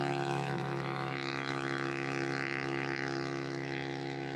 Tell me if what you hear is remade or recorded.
remade